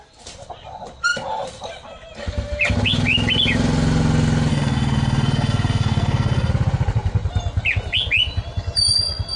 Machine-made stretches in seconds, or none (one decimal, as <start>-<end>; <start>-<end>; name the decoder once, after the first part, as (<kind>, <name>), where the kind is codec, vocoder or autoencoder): 4.5-6.5 (codec, SNAC)